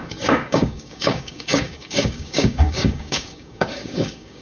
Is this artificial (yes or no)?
yes